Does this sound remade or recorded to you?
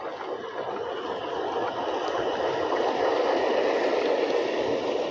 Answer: recorded